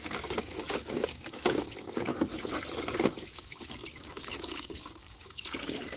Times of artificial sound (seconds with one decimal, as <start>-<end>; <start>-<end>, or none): 0.0-2.1; 3.0-6.0